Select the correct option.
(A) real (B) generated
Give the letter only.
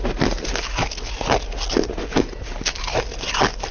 A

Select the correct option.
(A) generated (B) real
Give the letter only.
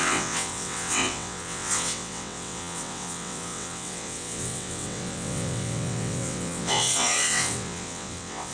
A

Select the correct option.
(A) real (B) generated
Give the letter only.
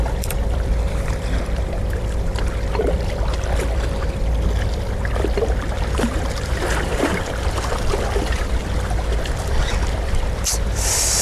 B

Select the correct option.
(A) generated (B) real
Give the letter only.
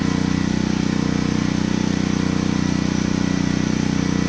B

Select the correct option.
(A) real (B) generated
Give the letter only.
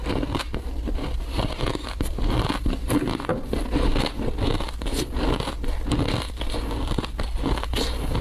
A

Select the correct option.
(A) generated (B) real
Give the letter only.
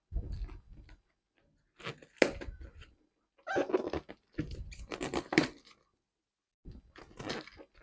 B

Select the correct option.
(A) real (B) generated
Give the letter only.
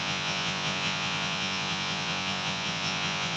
B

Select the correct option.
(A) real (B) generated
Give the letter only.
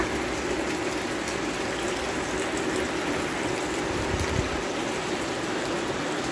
A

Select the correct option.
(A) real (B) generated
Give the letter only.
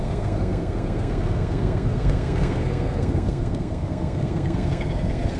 B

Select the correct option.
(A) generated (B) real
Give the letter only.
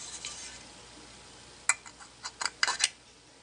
B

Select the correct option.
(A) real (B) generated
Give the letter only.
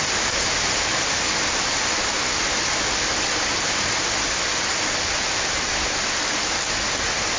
A